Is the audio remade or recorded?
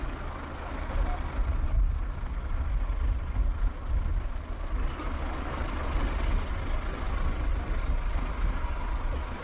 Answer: recorded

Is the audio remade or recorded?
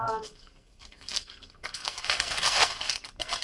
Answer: remade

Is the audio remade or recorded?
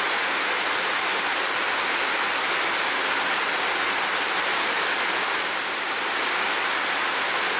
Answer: recorded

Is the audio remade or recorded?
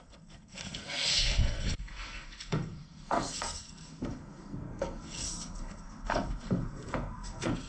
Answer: remade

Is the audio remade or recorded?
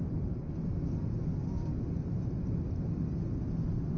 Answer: recorded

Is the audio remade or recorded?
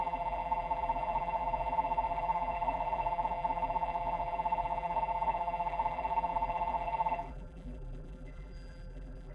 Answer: remade